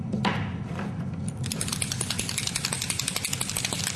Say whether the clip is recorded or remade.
recorded